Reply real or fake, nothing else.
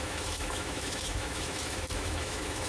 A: fake